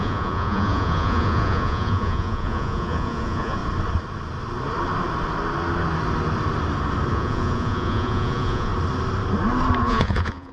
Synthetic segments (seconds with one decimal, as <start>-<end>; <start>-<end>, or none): 0.0-3.6; 7.1-8.7; 9.8-10.5